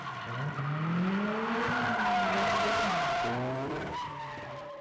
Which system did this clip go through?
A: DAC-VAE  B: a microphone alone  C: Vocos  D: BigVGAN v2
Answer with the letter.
B